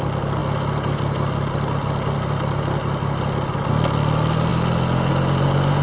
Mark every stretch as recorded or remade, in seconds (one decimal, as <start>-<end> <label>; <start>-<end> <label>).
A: 0.0-5.8 recorded